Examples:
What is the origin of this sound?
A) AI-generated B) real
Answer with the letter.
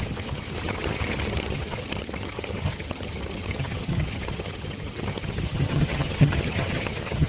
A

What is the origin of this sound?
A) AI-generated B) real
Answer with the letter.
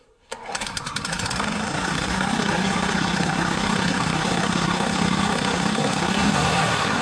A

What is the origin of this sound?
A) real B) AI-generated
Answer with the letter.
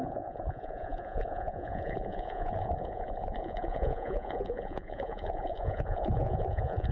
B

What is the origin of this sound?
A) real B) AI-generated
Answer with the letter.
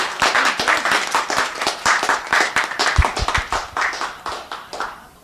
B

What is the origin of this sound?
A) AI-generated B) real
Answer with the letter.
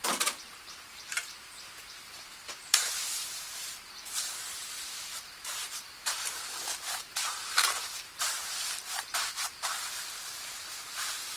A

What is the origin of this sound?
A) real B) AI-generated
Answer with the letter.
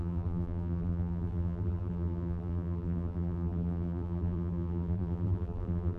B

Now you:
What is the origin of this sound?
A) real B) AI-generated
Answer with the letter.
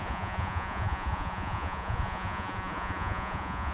B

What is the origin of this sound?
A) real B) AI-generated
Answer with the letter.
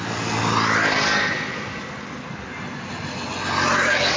A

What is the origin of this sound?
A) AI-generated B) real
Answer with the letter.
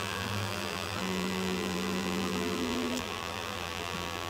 A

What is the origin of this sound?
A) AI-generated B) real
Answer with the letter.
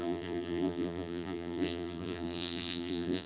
A